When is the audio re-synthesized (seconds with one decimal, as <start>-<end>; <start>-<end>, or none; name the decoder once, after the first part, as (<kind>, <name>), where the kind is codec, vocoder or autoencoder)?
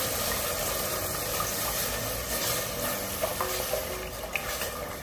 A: none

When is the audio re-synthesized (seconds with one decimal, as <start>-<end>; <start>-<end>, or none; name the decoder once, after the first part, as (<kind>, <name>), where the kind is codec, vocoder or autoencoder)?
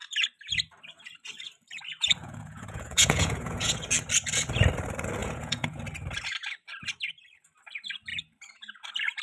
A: 2.2-3.8 (vocoder, Vocos); 5.2-5.8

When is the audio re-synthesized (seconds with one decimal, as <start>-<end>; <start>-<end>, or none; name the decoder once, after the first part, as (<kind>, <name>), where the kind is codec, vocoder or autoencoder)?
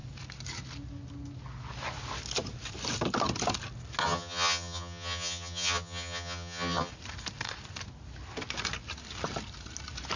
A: 4.0-6.9 (vocoder, HiFi-GAN)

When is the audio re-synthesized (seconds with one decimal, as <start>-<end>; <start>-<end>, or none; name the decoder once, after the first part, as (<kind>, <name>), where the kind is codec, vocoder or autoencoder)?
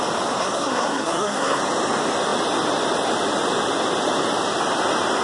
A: 0.4-1.6 (codec, SNAC)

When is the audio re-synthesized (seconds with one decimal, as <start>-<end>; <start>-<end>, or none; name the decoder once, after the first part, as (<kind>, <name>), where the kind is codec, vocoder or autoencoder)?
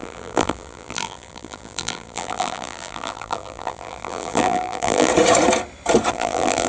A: 0.0-5.1 (vocoder, BigVGAN v2); 6.1-6.7